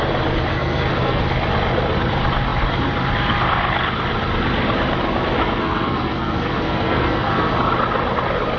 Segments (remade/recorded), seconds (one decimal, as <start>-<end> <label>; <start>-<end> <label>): 0.0-0.5 recorded; 0.5-1.2 remade; 1.2-5.4 recorded; 5.4-7.5 remade; 7.5-8.6 recorded